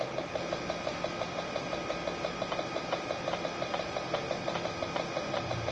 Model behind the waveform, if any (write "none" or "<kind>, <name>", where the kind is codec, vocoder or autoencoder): none